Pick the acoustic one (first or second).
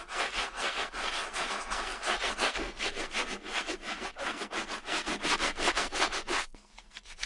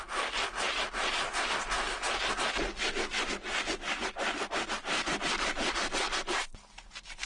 second